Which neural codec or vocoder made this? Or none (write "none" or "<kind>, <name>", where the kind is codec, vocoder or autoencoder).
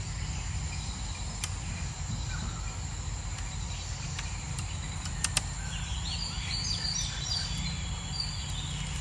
none